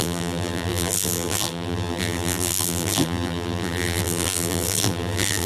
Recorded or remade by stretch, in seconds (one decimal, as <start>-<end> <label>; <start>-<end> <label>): 0.0-5.5 remade